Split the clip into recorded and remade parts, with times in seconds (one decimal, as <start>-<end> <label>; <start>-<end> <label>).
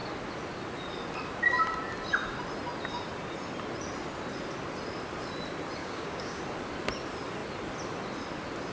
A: 0.0-5.8 recorded; 5.8-6.4 remade; 6.4-8.7 recorded